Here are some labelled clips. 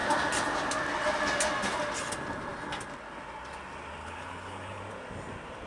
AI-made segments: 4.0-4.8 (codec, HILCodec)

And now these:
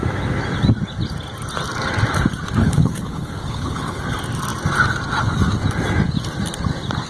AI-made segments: 2.6-4.0 (codec, HILCodec)